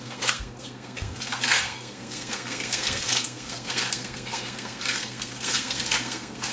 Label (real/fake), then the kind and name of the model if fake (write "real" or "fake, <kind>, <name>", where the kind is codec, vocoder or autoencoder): fake, codec, SNAC